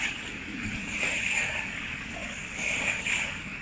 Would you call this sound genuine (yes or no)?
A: no